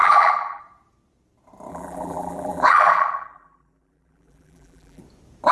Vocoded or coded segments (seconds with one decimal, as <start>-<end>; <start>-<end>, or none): 0.0-0.6; 1.7-5.0